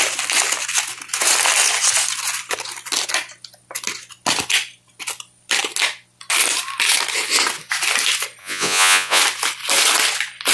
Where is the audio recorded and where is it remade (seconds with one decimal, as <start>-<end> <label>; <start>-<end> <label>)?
0.0-8.4 recorded; 8.4-9.2 remade; 9.2-10.5 recorded